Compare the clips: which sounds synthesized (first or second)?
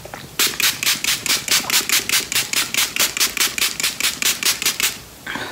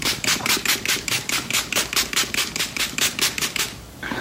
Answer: second